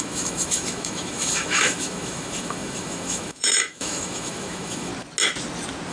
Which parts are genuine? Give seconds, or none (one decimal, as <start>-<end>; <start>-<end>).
4.9-5.9